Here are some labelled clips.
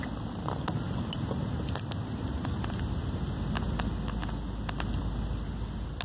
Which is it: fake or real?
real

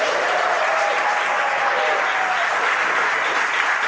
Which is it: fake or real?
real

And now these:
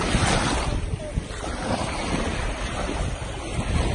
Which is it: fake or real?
real